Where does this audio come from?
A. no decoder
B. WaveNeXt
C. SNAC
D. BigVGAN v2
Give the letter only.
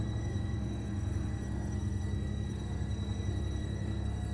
C